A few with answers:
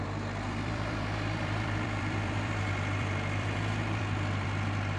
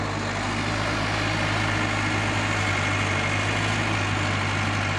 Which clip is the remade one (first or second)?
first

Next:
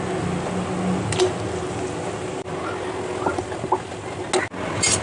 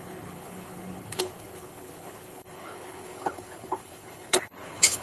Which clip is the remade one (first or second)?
second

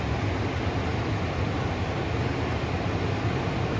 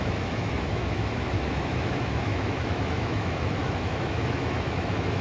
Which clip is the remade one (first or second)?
second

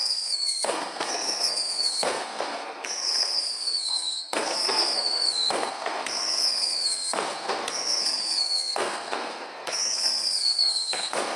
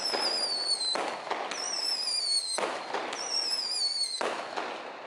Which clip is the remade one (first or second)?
first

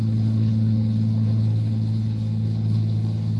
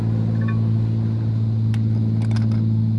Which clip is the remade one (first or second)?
first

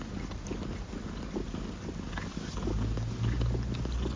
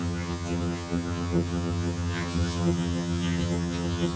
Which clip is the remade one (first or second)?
second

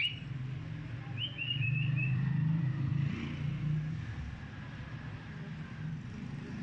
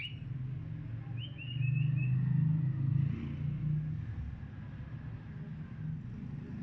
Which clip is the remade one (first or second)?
first